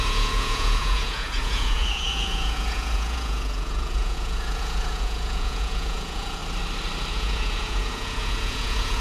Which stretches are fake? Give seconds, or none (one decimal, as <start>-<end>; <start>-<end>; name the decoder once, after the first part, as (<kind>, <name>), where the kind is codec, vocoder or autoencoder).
0.0-6.4 (vocoder, Vocos); 7.1-9.0